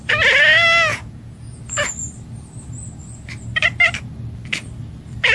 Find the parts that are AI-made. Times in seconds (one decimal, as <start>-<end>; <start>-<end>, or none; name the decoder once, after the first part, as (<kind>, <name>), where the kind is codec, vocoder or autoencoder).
0.9-1.6 (vocoder, Vocos)